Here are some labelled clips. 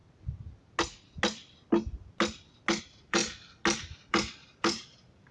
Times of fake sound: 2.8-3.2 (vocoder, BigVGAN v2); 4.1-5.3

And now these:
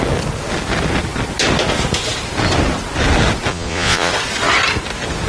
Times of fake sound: 3.5-4.1 (vocoder, Vocos)

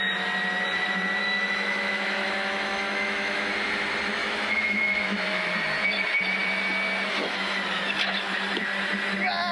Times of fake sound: 1.2-3.5 (autoencoder, DAC-VAE); 4.2-5.5

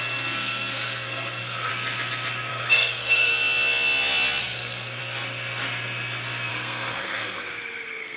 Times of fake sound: 0.0-1.7 (codec, SNAC); 2.5-3.3; 4.4-5.0; 6.5-8.2

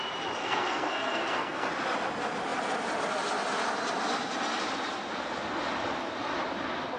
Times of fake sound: 0.4-1.7 (codec, SNAC)

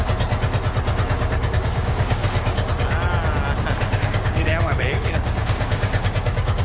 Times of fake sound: 1.5-2.2 (codec, DAC); 4.0-6.6

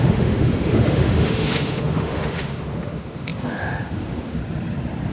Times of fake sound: 0.0-4.4 (autoencoder, DAC-VAE)